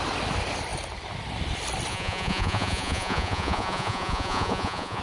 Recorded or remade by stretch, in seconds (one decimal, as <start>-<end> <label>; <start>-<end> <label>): 0.0-1.9 recorded; 1.9-5.0 remade